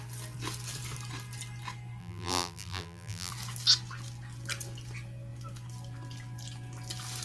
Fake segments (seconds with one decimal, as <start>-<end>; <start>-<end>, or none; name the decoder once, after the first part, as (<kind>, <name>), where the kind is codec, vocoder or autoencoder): 2.0-3.3 (vocoder, BigVGAN v2)